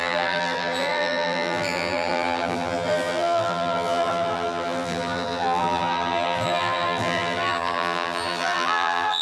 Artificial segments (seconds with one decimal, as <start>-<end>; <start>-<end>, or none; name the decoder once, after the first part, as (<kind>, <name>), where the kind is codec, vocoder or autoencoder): 0.0-9.2 (vocoder, BigVGAN v2)